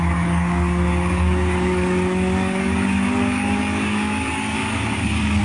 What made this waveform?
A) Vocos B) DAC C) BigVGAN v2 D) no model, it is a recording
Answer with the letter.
B